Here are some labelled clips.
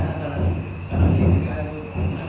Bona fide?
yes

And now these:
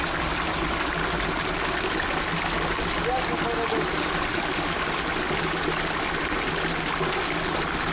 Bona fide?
yes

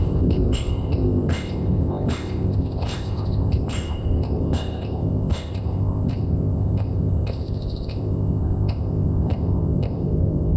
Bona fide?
no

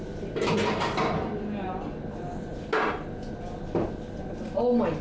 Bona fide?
yes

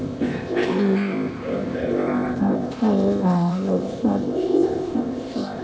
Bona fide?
no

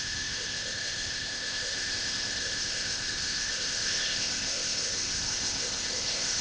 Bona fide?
no